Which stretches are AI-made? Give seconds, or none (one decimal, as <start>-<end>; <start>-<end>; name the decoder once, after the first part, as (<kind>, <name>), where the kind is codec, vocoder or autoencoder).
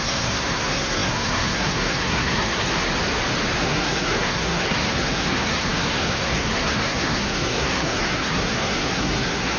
0.0-2.9 (codec, SNAC); 3.6-9.6